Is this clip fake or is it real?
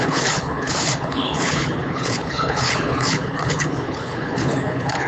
fake